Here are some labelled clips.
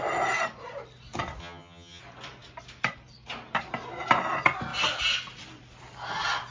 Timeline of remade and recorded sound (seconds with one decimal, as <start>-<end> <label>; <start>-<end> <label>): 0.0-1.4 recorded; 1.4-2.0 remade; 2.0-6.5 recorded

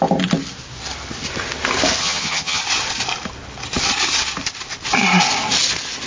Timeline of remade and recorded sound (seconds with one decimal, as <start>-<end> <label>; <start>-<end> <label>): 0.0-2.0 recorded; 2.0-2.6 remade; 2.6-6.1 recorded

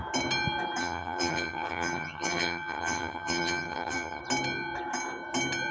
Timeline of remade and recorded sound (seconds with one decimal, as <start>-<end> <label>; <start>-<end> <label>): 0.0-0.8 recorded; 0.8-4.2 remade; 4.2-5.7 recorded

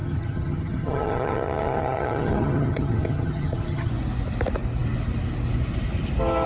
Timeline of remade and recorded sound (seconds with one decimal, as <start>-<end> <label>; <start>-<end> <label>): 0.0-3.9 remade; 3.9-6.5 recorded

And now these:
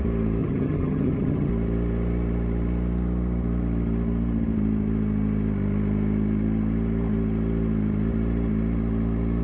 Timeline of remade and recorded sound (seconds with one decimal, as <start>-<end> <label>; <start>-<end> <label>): 0.0-0.4 recorded; 0.4-1.5 remade; 1.5-9.4 recorded

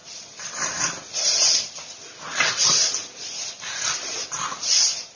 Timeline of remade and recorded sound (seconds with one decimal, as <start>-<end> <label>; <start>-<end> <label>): 0.0-5.2 recorded